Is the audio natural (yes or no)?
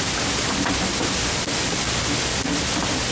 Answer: yes